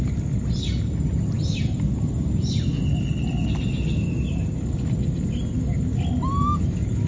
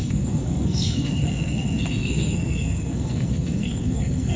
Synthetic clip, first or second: second